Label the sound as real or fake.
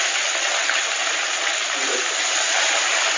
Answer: real